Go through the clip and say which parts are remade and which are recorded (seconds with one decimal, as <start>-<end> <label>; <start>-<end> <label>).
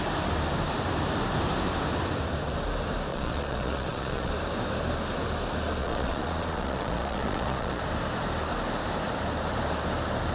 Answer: 0.0-3.1 recorded; 3.1-4.3 remade; 4.3-5.8 recorded; 5.8-7.8 remade; 7.8-10.3 recorded